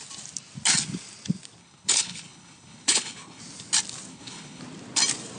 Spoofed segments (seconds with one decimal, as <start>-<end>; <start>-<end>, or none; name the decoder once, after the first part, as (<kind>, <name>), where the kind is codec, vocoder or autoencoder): 1.6-3.4 (codec, HILCodec); 4.1-4.6